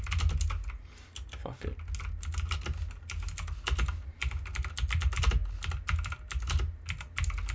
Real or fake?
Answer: real